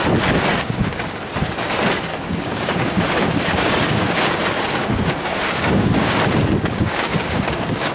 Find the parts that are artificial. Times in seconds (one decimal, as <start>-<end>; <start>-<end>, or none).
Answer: 0.5-1.2; 2.1-4.3; 4.8-7.9